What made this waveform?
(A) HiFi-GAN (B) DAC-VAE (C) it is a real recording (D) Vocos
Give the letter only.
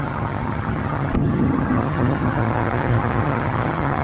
A